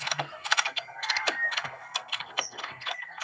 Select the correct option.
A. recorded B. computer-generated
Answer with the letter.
B